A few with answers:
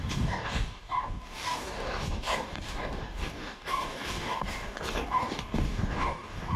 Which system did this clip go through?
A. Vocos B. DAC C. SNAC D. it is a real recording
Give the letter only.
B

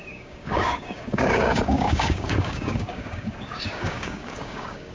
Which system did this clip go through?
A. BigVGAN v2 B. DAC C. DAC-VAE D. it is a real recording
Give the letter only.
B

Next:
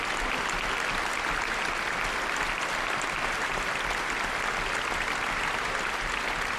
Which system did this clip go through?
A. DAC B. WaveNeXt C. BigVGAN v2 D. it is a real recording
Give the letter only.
D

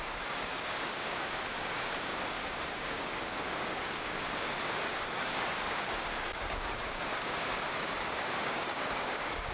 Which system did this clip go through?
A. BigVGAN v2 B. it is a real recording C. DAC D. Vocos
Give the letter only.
C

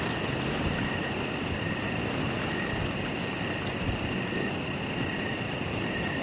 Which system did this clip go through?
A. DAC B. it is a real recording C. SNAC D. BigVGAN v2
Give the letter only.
B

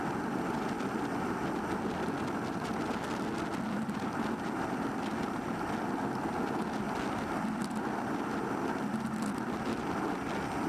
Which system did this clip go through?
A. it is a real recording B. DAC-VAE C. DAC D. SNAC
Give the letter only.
A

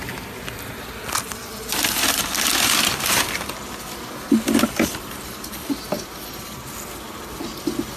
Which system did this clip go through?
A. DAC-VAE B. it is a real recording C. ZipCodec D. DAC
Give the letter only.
B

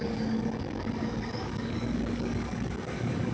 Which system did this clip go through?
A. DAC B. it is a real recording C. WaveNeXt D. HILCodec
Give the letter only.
A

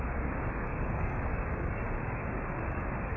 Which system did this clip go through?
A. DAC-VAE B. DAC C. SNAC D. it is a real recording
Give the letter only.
B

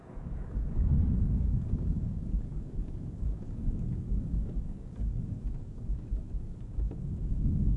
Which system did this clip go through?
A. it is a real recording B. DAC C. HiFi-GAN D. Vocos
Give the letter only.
B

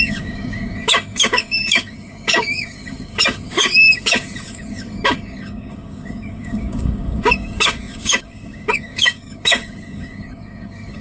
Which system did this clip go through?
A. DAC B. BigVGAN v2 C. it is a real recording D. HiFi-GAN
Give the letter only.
A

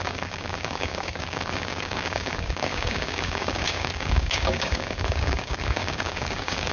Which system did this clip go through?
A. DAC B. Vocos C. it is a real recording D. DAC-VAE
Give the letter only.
A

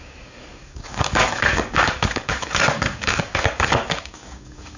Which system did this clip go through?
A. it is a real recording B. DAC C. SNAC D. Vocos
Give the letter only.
B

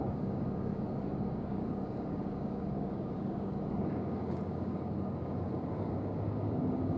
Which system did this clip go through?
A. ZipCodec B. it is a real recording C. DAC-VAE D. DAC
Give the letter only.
D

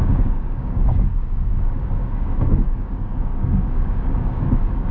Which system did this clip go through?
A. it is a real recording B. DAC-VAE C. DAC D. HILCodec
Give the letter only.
C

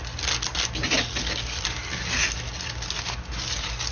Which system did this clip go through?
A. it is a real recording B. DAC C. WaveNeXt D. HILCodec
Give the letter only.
A